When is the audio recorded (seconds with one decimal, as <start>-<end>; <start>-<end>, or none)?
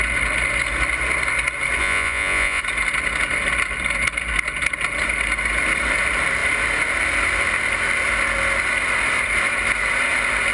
0.0-1.8; 2.6-10.5